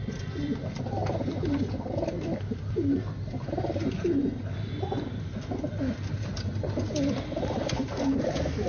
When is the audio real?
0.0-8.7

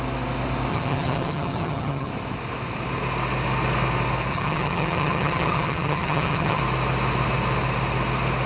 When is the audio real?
0.0-0.7; 2.1-4.3; 6.6-8.5

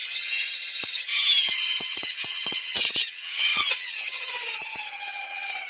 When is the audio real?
none

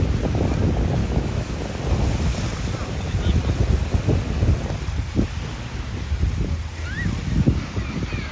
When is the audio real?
0.0-1.0; 1.6-8.3

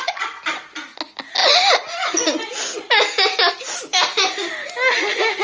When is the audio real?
0.0-5.4

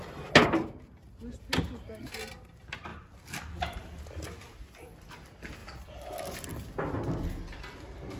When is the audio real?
0.0-2.9; 4.0-8.2

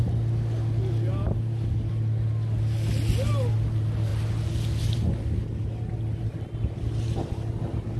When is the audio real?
0.0-8.0